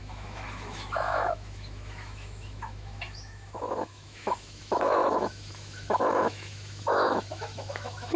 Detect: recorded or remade remade